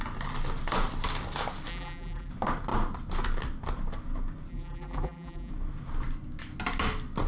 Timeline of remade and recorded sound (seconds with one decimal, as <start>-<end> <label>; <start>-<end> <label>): 0.0-1.7 recorded; 1.7-2.3 remade; 2.3-4.5 recorded; 4.5-5.5 remade; 5.5-7.3 recorded